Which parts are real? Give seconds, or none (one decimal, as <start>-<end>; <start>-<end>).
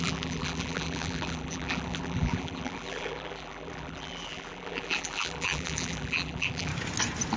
6.7-7.4